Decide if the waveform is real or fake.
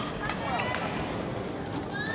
real